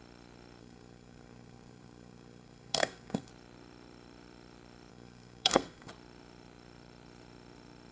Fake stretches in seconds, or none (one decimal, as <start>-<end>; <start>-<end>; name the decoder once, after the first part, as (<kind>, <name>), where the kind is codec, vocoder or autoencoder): 0.6-3.3 (codec, SNAC); 4.9-5.9